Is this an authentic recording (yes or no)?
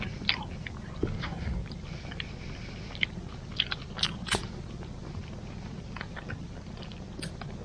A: yes